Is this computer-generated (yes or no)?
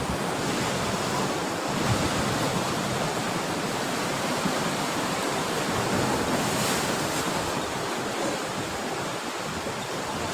yes